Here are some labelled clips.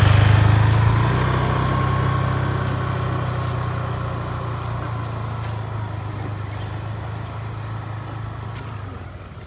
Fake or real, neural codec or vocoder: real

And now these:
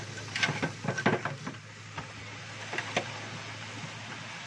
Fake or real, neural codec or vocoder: real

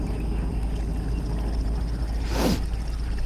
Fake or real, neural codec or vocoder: real